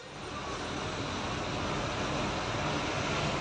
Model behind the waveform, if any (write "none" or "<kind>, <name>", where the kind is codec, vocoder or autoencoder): none